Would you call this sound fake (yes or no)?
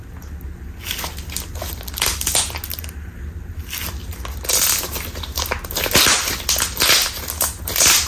no